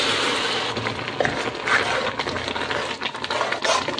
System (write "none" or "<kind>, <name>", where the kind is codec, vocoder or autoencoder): none